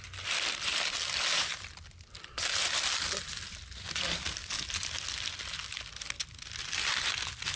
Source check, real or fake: real